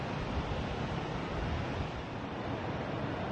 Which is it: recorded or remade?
recorded